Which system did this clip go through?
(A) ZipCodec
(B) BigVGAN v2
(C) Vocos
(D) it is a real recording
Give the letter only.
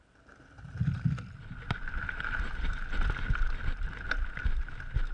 D